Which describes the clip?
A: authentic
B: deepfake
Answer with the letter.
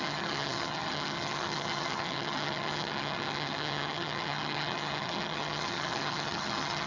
B